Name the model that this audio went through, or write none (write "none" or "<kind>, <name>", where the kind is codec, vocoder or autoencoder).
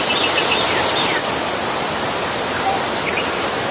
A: none